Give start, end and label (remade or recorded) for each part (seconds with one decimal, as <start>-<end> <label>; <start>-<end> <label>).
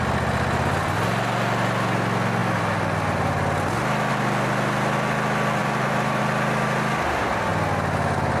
0.0-5.6 recorded; 5.6-6.2 remade; 6.2-8.4 recorded